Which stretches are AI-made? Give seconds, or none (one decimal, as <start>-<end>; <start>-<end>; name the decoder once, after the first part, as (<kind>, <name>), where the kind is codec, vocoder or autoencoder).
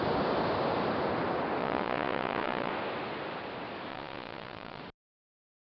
1.6-2.7 (vocoder, Vocos); 3.9-4.8